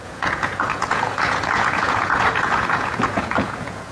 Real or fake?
fake